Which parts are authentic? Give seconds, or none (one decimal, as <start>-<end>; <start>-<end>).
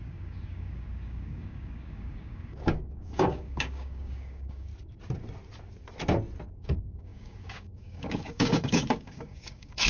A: 4.7-6.6